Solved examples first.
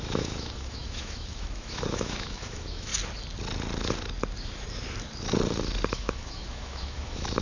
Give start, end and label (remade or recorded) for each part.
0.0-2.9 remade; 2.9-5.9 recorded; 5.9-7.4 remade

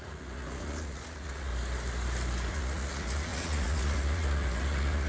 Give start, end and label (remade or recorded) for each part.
0.0-1.5 remade; 1.5-2.5 recorded; 2.5-5.1 remade

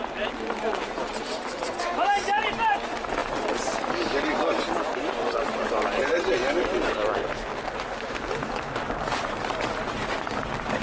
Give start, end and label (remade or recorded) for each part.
0.0-10.8 recorded

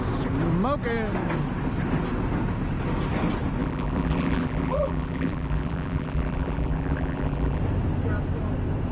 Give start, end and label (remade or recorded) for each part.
0.0-3.6 recorded; 3.6-7.6 remade; 7.6-8.9 recorded

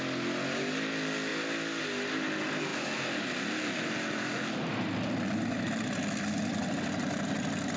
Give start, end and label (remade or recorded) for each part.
0.0-7.8 recorded

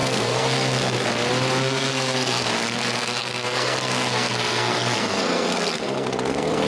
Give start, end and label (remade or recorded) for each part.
0.0-1.1 remade; 1.1-1.6 recorded; 1.6-2.5 remade; 2.5-3.0 recorded; 3.0-6.7 remade

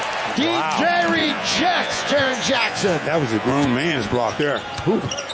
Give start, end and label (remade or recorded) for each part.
0.0-1.2 recorded; 1.2-4.4 remade; 4.4-5.3 recorded